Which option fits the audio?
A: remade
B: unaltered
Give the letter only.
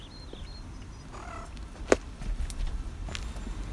B